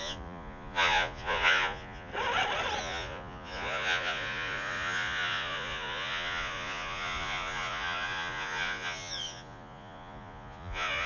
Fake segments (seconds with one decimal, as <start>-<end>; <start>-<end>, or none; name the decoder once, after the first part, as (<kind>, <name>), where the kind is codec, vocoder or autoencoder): 0.0-2.1 (vocoder, Vocos); 2.8-11.1